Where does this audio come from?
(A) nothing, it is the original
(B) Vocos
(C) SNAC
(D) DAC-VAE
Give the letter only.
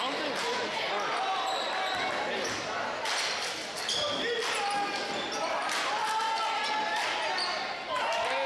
A